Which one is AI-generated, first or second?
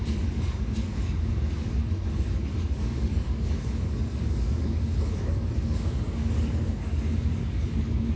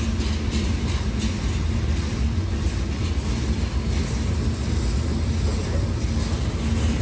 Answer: first